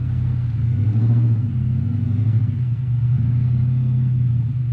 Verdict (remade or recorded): remade